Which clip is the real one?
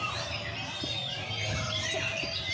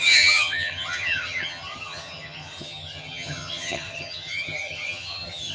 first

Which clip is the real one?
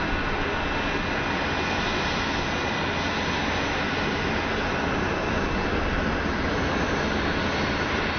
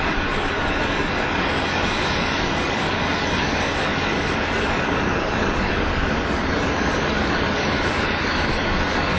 first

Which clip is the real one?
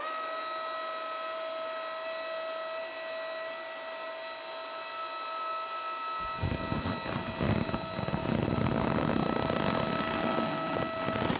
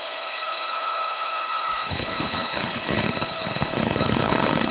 first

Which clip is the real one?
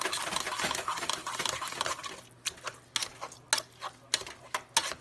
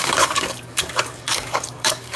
first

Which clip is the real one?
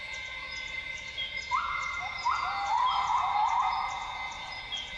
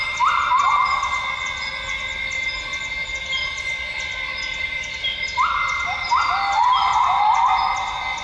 second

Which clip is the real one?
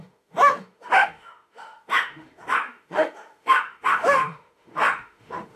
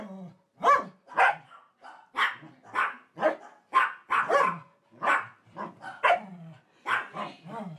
second